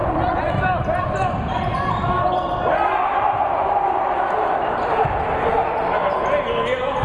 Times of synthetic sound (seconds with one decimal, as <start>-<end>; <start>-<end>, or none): 0.0-0.5; 5.6-6.2